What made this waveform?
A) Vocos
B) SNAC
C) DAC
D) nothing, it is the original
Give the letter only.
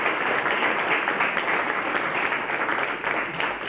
D